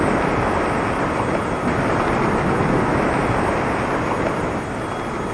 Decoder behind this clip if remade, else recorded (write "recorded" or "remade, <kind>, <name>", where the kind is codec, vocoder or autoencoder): recorded